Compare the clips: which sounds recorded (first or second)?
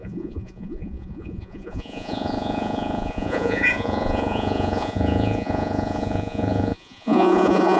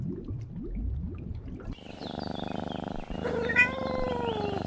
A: second